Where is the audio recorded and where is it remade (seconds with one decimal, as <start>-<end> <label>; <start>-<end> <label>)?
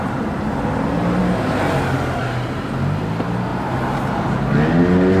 0.0-3.5 recorded; 3.5-4.1 remade; 4.1-5.2 recorded